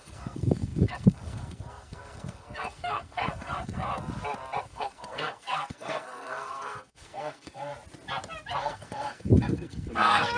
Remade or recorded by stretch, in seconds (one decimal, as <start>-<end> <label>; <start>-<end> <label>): 0.0-3.9 remade; 3.9-4.6 recorded; 4.6-7.7 remade; 7.7-8.6 recorded; 8.6-10.4 remade